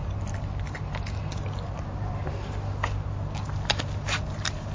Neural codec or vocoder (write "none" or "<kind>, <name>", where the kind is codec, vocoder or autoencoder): none